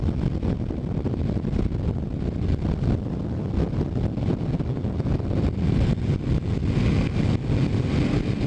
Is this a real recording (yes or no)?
yes